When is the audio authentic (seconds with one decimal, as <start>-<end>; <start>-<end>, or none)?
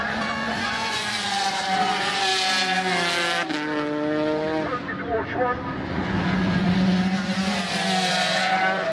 2.3-5.7